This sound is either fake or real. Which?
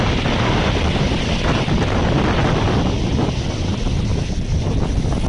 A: real